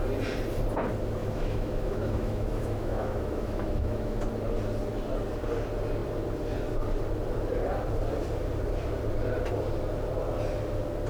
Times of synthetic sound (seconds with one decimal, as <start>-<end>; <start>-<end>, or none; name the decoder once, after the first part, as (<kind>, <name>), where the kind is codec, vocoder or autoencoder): 1.2-4.2 (autoencoder, DAC-VAE)